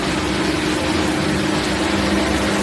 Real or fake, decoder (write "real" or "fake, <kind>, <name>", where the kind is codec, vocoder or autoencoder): real